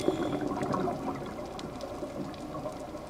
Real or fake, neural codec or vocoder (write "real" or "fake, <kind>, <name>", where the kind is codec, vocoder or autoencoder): real